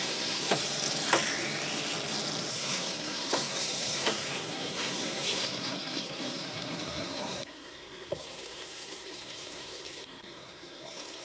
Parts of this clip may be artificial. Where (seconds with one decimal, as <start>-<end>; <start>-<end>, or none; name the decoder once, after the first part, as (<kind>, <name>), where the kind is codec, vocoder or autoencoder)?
0.0-0.6 (codec, SNAC); 2.5-11.2